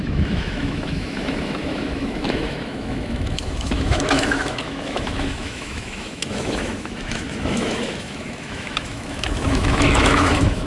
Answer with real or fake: fake